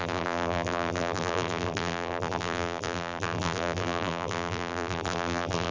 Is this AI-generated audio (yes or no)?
yes